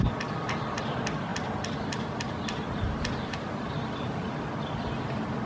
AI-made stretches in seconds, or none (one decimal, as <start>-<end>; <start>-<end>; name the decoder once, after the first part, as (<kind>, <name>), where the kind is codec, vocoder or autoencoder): none